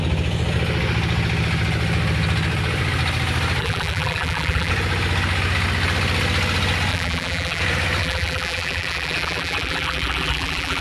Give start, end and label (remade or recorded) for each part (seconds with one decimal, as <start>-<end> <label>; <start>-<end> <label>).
0.0-3.6 recorded; 3.6-4.7 remade; 4.7-6.9 recorded; 6.9-7.6 remade; 7.6-8.0 recorded; 8.0-10.8 remade